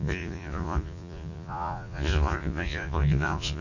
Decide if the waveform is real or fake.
fake